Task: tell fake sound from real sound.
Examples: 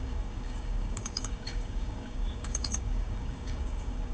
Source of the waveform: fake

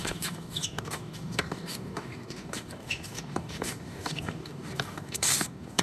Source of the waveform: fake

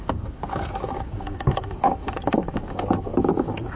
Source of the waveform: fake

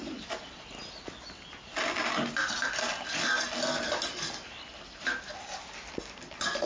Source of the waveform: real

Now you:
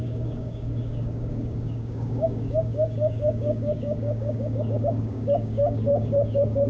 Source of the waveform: fake